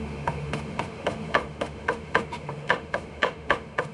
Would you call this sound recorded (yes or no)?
no